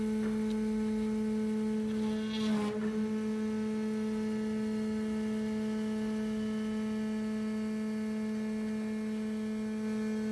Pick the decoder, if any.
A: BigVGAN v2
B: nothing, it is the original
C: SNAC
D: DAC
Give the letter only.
B